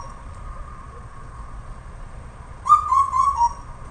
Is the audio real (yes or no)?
no